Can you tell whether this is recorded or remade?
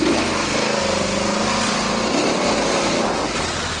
recorded